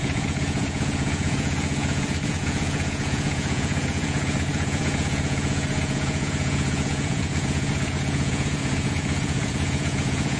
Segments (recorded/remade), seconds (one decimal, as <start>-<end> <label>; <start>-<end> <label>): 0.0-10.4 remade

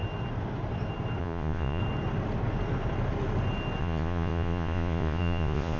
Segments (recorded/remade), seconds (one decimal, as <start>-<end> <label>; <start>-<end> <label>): 0.0-1.2 recorded; 1.2-1.8 remade; 1.8-3.8 recorded; 3.8-5.8 remade

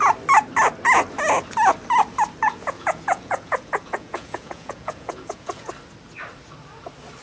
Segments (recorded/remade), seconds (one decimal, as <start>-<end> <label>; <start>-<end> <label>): 0.0-2.4 recorded; 2.4-5.7 remade; 5.7-7.2 recorded

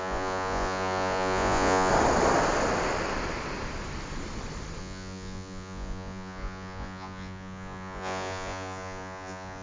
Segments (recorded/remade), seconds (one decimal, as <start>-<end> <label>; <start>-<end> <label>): 0.0-1.9 remade; 1.9-4.8 recorded; 4.8-9.6 remade

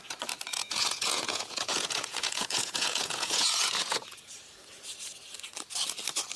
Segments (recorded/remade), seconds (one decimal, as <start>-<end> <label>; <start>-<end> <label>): 0.0-0.5 recorded; 0.5-4.3 remade; 4.3-6.4 recorded

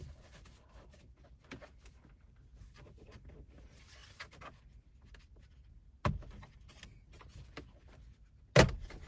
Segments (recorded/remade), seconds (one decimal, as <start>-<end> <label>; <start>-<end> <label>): 0.0-9.1 recorded